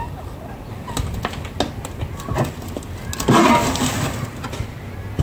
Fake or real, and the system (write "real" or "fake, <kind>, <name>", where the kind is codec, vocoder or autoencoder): real